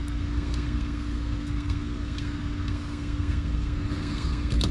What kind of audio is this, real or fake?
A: fake